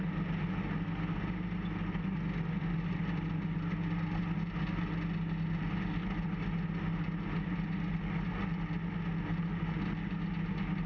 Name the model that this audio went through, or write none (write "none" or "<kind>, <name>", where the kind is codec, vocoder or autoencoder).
none